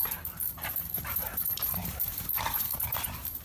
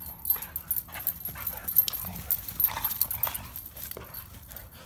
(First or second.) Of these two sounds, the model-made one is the first